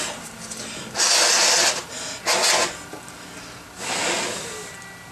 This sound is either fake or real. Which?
real